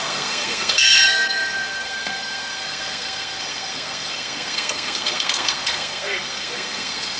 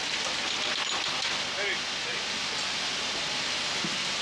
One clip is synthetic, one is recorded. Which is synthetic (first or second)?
first